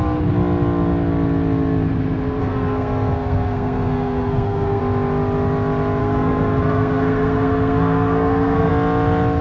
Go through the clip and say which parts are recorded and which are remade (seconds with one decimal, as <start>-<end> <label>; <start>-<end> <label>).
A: 0.0-2.4 recorded; 2.4-4.8 remade; 4.8-6.0 recorded; 6.0-8.7 remade; 8.7-9.4 recorded